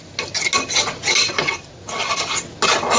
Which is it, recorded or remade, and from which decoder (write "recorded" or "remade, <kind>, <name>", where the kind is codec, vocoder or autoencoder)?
recorded